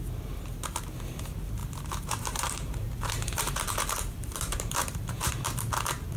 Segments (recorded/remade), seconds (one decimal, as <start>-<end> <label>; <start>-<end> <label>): 0.0-1.6 recorded; 1.6-5.3 remade; 5.3-6.2 recorded